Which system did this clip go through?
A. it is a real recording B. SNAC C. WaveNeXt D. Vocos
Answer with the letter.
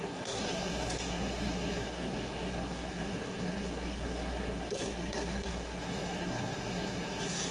B